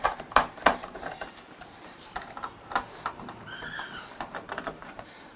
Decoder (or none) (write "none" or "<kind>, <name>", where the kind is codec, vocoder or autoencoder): vocoder, BigVGAN v2